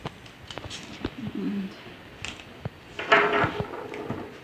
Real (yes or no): yes